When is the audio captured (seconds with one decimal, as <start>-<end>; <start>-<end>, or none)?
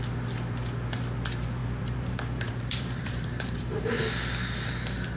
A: 0.0-1.6; 4.0-5.2